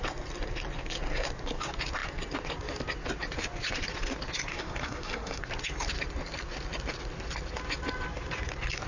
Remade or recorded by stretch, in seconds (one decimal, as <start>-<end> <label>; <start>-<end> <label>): 0.0-4.5 recorded; 4.5-5.4 remade; 5.4-8.9 recorded